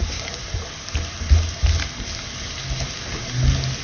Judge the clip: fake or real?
real